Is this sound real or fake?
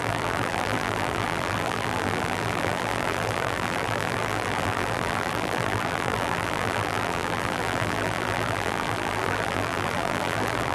fake